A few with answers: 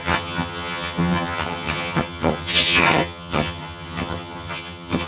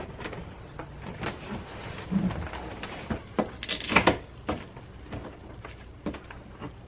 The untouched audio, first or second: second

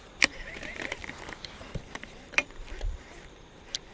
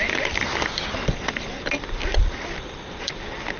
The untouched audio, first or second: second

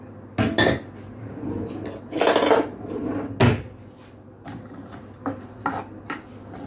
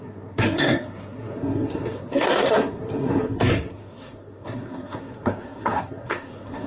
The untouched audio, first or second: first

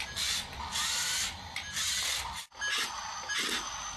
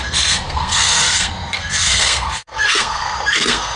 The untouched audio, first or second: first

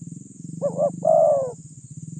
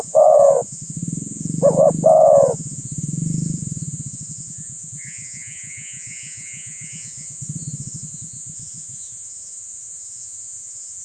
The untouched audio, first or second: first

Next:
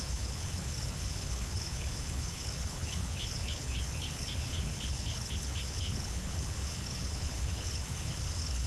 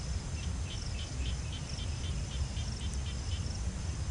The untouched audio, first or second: second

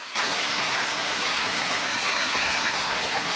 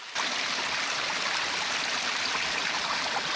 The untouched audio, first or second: second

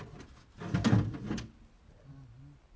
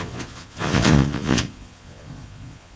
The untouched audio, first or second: first